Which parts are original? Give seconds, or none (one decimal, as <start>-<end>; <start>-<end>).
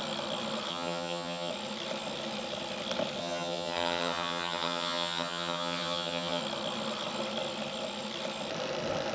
0.0-0.7; 1.5-3.2; 6.4-9.1